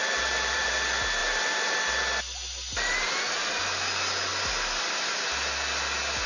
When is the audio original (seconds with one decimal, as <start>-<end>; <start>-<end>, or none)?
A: 0.7-1.2; 1.8-6.3